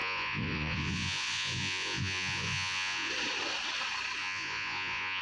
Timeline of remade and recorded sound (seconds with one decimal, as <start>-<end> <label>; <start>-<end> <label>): 0.0-3.1 remade; 3.1-4.2 recorded; 4.2-5.2 remade